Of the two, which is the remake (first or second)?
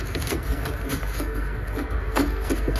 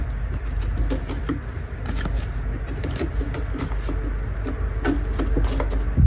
first